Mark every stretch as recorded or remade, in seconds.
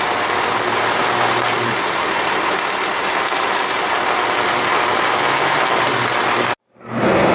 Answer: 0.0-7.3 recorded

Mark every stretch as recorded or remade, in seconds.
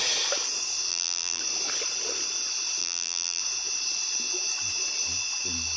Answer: 0.0-0.9 recorded; 0.9-1.4 remade; 1.4-2.8 recorded; 2.8-3.4 remade; 3.4-5.8 recorded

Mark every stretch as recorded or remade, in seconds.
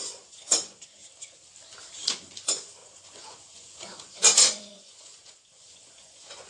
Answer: 0.0-1.0 remade; 1.0-2.1 recorded; 2.1-6.5 remade